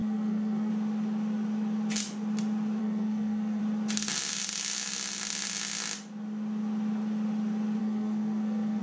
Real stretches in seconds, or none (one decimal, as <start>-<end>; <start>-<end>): 0.7-2.8; 3.6-7.8